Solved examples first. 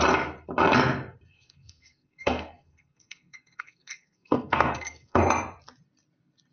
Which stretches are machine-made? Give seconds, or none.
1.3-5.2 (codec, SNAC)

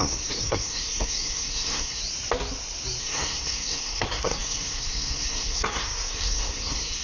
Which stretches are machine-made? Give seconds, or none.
0.0-2.0 (codec, SNAC); 3.0-7.0

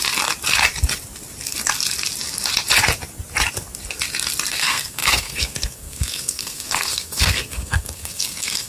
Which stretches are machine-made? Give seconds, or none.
4.5-8.7 (codec, SNAC)

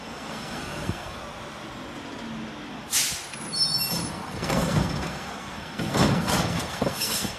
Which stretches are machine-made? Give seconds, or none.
0.0-1.2 (codec, SNAC); 4.1-7.4

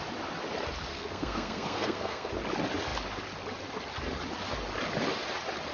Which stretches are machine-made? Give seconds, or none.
0.9-2.3 (codec, SNAC)

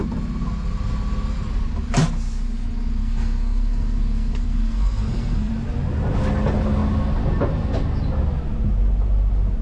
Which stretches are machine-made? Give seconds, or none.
3.0-5.5 (codec, SNAC)

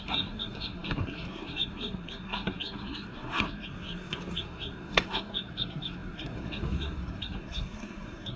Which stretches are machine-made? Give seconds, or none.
0.0-8.4 (codec, SNAC)